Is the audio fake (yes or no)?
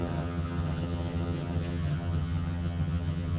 yes